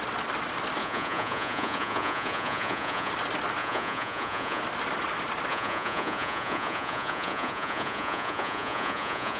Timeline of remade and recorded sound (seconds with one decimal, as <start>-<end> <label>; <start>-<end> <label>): 0.0-0.8 recorded; 0.8-3.1 remade; 3.1-3.6 recorded; 3.6-4.6 remade; 4.6-5.5 recorded; 5.5-9.4 remade